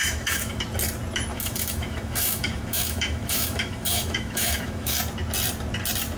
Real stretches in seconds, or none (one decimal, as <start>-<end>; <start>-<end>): 0.6-1.3; 5.0-6.2